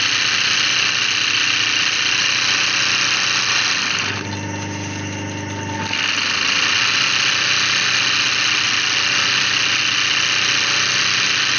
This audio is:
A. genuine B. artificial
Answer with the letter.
A